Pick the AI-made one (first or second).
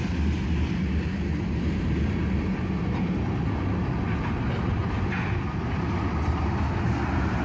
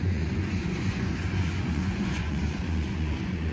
second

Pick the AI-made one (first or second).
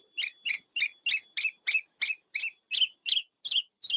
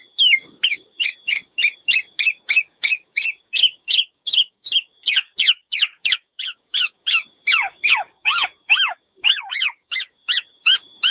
second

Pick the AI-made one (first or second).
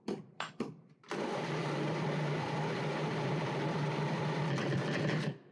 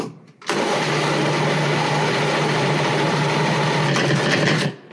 first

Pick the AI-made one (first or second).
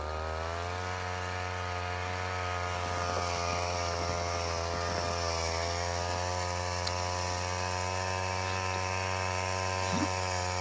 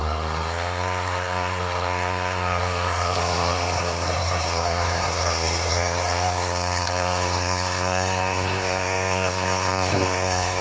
second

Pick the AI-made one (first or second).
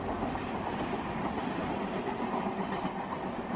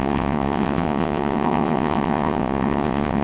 second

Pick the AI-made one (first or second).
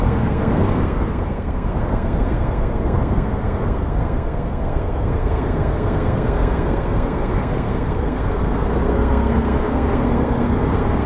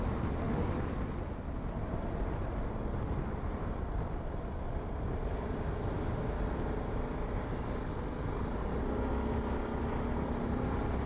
first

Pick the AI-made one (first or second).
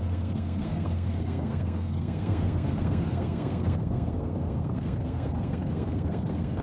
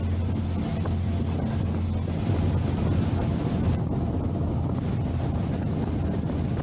first